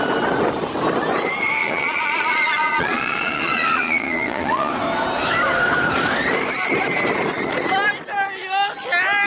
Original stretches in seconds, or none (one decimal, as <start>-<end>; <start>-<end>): 0.0-1.6; 4.7-9.3